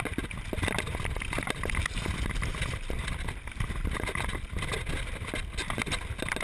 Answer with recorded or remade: recorded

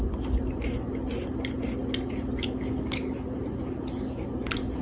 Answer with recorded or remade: recorded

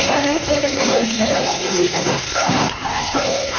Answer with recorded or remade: remade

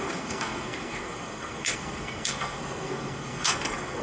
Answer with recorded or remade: remade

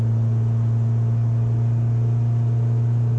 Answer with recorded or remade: recorded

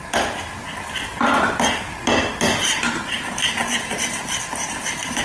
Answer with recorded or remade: recorded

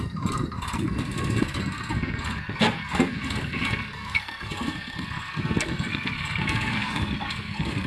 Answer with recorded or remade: remade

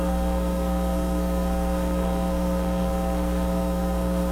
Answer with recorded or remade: remade